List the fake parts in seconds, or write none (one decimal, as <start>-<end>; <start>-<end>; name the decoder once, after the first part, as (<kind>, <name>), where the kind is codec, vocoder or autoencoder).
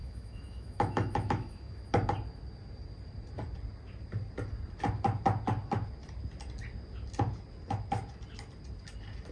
0.0-1.8 (autoencoder, DAC-VAE)